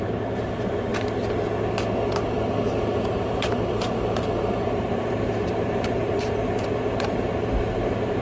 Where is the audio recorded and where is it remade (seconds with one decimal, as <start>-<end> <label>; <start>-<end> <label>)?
0.0-0.9 remade; 0.9-3.1 recorded; 3.1-8.2 remade